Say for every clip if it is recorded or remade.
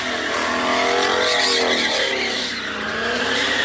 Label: recorded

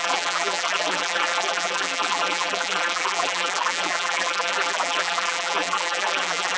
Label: remade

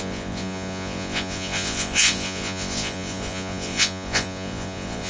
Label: remade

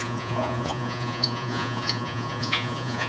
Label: remade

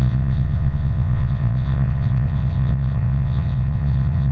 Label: remade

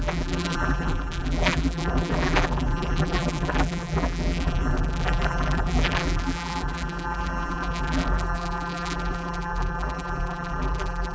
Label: remade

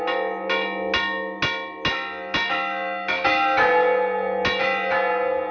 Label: recorded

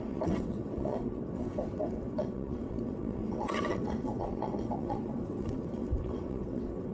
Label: remade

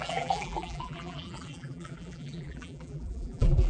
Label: remade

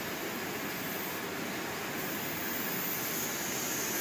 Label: recorded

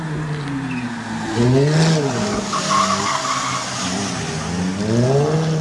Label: recorded